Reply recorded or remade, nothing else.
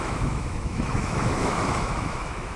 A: remade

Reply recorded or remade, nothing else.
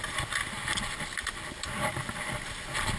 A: recorded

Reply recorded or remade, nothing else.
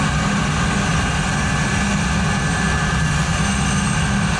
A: recorded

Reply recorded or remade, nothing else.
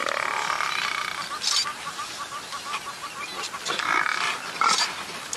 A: recorded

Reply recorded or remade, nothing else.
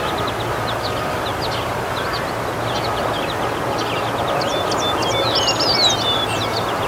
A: recorded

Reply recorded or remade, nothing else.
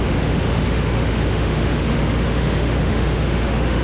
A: remade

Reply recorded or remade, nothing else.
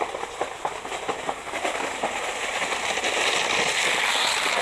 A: recorded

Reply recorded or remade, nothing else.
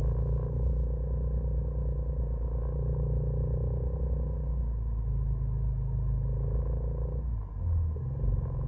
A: recorded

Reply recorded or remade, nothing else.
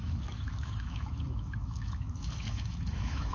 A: remade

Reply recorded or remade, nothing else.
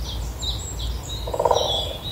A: recorded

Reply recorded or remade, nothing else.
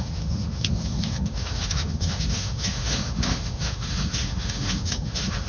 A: remade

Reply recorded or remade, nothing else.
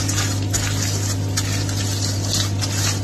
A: recorded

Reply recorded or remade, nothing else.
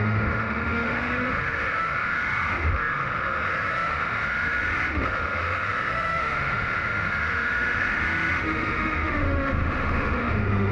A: remade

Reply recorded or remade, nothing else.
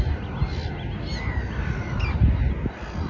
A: recorded